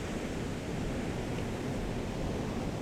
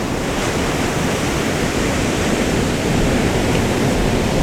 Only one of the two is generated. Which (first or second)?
second